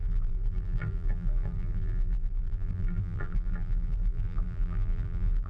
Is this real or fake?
fake